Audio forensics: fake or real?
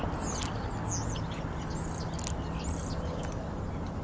real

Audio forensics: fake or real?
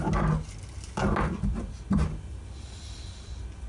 real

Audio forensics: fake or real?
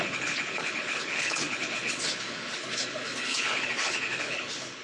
fake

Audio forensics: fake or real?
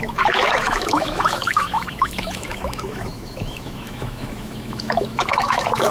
fake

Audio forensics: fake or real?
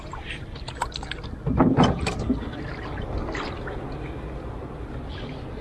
real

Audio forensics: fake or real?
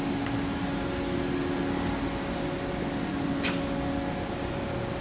real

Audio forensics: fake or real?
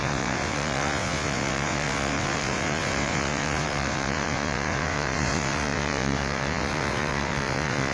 fake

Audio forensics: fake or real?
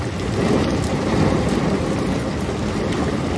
real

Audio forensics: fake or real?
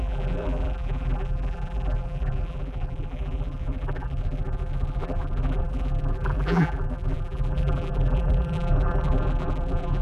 fake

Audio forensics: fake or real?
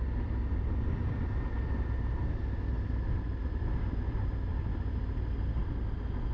real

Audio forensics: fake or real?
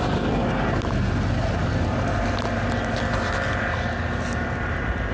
real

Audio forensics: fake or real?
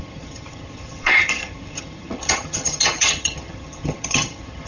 fake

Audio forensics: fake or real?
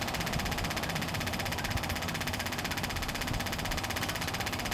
real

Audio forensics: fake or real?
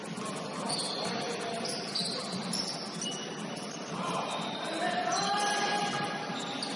real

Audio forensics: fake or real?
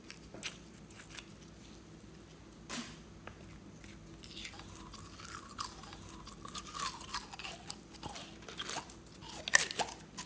real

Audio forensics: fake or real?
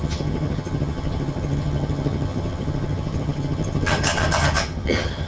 fake